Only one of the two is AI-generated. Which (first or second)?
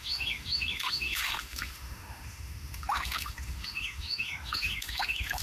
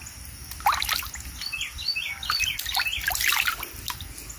first